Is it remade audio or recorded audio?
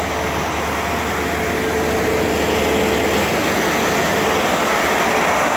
recorded